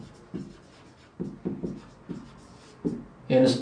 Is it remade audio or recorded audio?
recorded